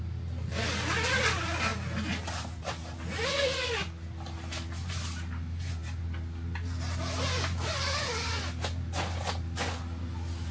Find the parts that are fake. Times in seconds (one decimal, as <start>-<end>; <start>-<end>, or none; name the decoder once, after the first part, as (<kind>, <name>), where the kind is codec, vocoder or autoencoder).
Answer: none